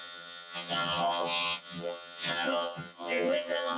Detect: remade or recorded remade